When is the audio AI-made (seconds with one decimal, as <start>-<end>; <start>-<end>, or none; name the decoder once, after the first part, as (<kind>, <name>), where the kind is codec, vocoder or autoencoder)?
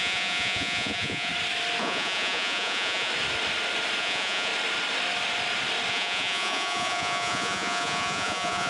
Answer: 0.0-1.3 (vocoder, Vocos); 1.8-3.1; 4.0-4.5; 5.9-8.7